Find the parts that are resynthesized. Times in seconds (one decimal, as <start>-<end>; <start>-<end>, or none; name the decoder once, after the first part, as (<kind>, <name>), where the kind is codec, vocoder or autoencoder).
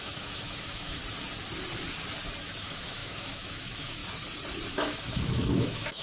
0.0-1.0 (autoencoder, DAC-VAE); 2.4-4.0; 4.7-6.0